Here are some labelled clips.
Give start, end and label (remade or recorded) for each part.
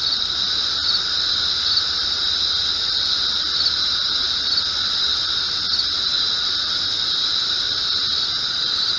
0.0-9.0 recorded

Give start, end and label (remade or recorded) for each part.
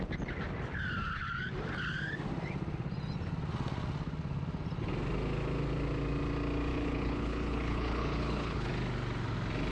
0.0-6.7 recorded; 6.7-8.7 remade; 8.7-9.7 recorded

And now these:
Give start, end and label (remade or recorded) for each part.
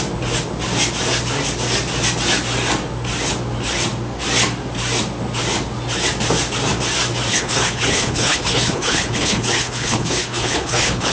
0.0-7.3 recorded; 7.3-11.1 remade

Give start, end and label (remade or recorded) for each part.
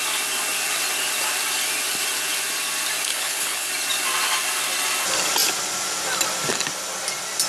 0.0-3.1 recorded; 3.1-3.7 remade; 3.7-7.5 recorded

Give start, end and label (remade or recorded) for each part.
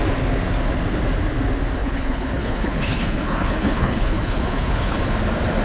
0.0-1.8 recorded; 1.8-5.0 remade; 5.0-5.6 recorded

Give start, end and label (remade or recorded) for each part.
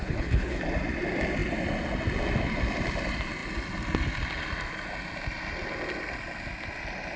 0.0-0.6 remade; 0.6-7.2 recorded